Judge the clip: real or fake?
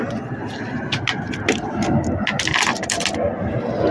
real